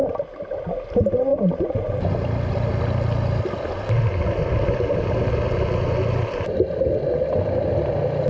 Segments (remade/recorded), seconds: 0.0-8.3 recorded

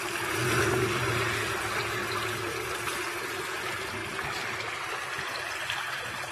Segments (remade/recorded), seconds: 0.0-2.0 recorded; 2.0-2.6 remade; 2.6-6.3 recorded

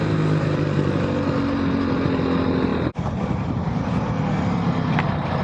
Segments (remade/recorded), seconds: 0.0-5.4 recorded

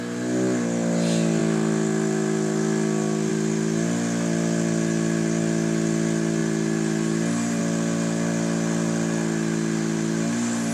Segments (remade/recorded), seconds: 0.0-6.4 recorded; 6.4-7.6 remade; 7.6-10.7 recorded